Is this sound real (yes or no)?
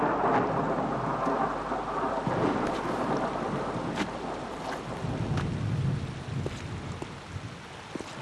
yes